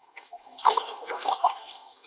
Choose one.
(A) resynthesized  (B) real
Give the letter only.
A